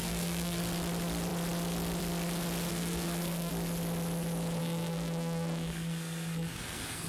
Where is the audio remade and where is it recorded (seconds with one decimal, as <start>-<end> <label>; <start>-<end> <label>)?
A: 0.0-0.6 remade; 0.6-2.7 recorded; 2.7-3.5 remade; 3.5-4.6 recorded; 4.6-7.1 remade